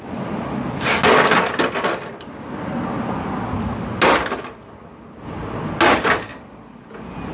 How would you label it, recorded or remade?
recorded